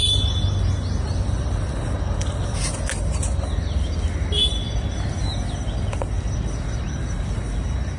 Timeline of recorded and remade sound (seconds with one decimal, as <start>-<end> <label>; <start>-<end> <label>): 0.0-8.0 recorded